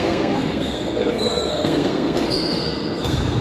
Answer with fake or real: fake